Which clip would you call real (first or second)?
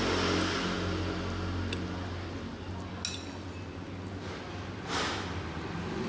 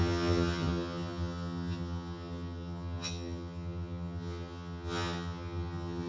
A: first